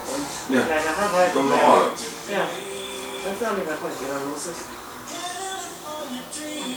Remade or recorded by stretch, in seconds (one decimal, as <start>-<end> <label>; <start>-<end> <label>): 0.0-5.9 remade; 5.9-6.8 recorded